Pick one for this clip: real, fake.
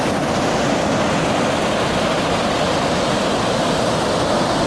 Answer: real